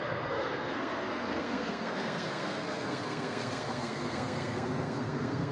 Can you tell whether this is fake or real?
fake